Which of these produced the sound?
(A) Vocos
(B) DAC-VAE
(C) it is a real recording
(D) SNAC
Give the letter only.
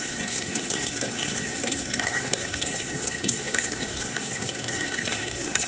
D